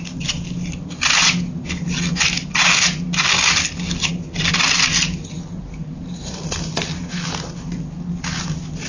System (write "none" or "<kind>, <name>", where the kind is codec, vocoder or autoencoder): none